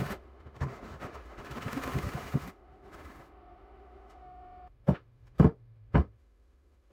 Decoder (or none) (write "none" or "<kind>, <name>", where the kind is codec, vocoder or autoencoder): autoencoder, DAC-VAE